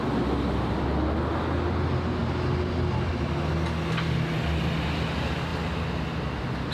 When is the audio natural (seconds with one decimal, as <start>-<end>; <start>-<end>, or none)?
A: 0.0-6.7

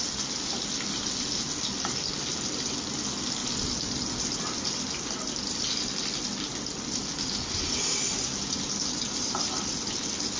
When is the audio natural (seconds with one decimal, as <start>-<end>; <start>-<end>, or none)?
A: 0.0-10.4

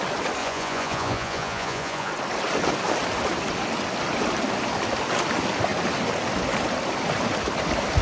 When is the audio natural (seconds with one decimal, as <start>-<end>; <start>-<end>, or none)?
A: 0.0-0.4; 2.1-8.0

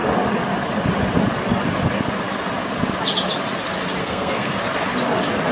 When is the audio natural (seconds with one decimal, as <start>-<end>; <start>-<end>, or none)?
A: 0.0-4.0; 4.6-5.5